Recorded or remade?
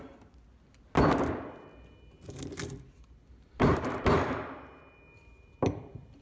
recorded